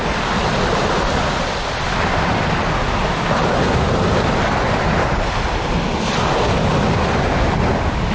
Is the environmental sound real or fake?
real